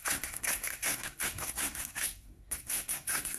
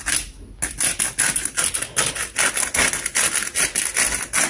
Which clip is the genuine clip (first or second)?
second